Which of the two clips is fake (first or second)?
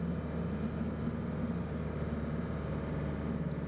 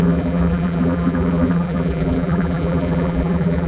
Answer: second